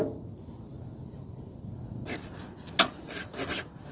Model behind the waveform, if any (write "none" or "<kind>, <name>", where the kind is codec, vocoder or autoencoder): none